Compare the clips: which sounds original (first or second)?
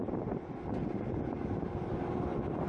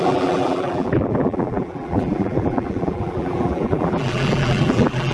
first